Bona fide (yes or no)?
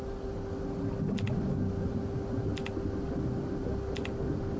yes